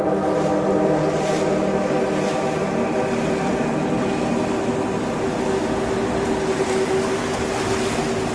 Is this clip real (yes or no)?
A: yes